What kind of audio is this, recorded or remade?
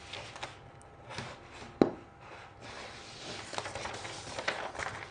recorded